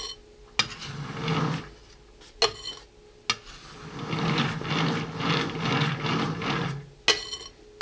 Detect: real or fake real